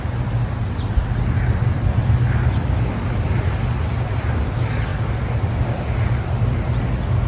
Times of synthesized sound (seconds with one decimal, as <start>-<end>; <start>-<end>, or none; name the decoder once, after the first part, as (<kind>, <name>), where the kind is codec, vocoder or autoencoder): none